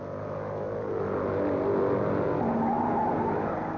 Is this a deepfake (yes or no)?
no